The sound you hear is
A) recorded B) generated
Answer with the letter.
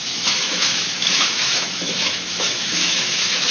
B